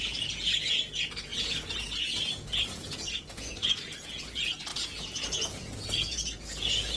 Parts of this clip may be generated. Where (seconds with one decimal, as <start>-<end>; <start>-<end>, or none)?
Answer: 0.0-7.0